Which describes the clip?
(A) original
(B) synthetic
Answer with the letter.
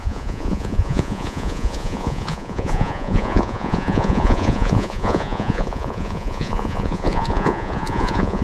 B